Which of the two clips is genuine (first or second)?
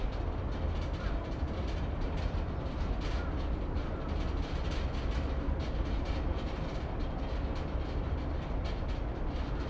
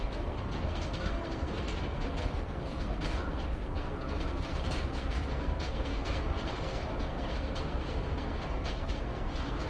first